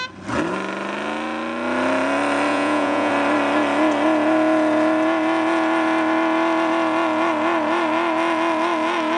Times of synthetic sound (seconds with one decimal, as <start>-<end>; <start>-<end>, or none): 2.5-3.1

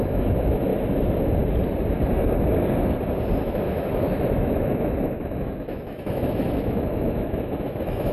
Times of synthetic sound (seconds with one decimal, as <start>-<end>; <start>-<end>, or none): 0.0-0.7; 3.4-8.1

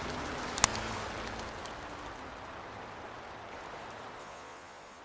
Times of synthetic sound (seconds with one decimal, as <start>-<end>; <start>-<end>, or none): 4.2-5.0

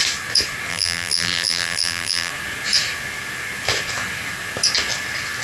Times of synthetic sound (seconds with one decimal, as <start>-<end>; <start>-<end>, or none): 0.7-2.3